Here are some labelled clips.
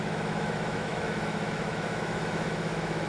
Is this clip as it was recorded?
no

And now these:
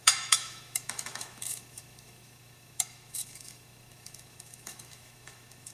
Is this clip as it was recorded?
no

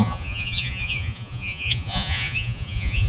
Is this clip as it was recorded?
no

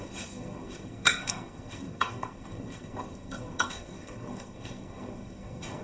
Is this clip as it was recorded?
no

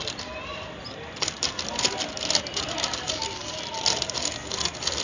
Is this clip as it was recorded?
no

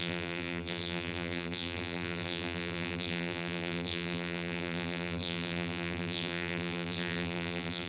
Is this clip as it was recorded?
no